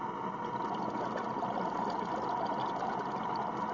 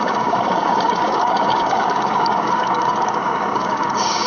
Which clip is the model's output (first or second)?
second